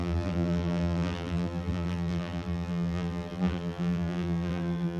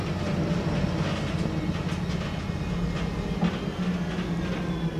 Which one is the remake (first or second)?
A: first